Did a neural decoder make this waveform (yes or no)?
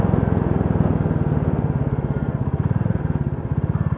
no